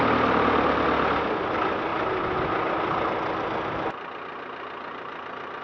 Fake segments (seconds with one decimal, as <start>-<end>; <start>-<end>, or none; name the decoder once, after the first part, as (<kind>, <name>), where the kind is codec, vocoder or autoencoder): none